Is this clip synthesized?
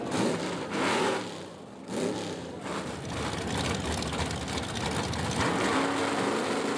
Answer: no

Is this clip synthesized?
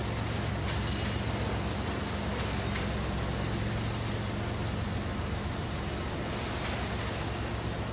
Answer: no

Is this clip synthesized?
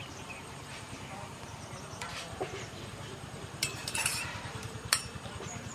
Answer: yes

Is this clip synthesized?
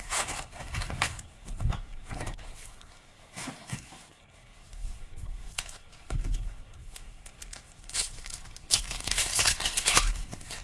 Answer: yes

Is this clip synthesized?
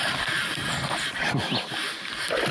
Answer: no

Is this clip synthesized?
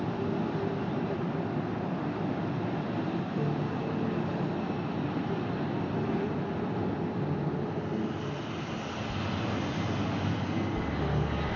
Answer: no